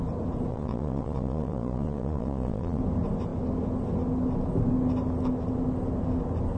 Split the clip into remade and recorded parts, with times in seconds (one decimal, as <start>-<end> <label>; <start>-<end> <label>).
0.0-0.5 recorded; 0.5-2.8 remade; 2.8-6.6 recorded